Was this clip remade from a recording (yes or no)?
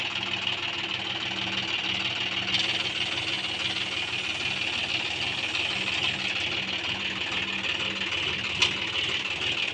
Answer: no